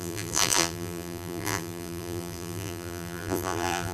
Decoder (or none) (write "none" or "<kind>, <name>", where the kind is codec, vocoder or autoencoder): vocoder, BigVGAN v2